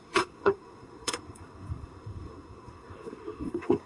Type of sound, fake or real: fake